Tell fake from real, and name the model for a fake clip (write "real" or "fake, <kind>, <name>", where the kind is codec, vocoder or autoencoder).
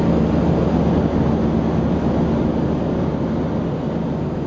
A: real